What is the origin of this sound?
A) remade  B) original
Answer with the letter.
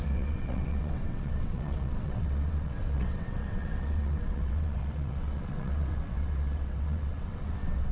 A